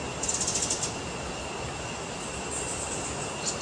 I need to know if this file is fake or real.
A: real